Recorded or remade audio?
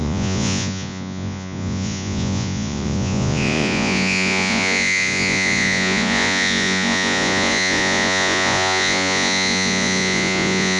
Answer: remade